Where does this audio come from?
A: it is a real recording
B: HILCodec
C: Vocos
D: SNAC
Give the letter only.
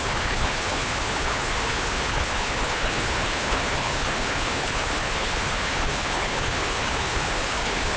B